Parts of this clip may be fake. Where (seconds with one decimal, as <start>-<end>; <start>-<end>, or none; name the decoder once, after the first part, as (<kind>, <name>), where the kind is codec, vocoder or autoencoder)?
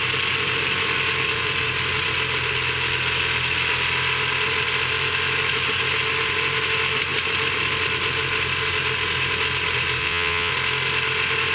10.0-10.5 (vocoder, WaveNeXt)